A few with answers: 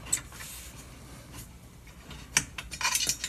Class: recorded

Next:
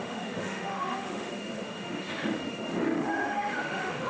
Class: remade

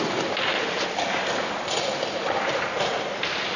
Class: recorded